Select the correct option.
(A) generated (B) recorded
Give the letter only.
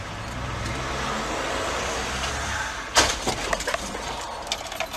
B